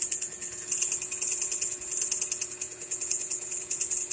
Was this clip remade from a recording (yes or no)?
yes